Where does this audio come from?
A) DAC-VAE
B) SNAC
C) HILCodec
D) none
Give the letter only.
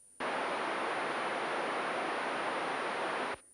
D